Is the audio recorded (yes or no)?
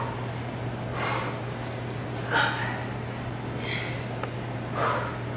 yes